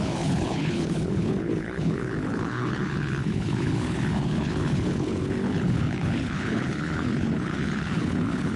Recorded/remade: remade